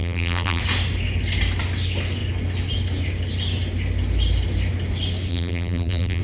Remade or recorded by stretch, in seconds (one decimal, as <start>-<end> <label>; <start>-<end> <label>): 0.0-0.6 remade; 0.6-5.3 recorded; 5.3-6.2 remade